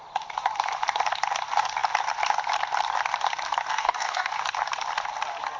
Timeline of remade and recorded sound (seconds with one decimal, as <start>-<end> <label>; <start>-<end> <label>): 0.0-3.7 recorded; 3.7-4.3 remade; 4.3-5.6 recorded